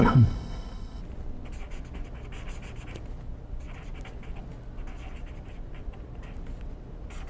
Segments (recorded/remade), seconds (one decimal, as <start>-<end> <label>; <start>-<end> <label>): 0.0-1.0 remade; 1.0-7.3 recorded